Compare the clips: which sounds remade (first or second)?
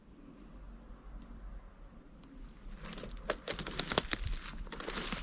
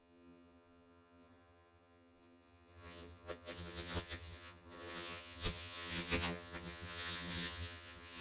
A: second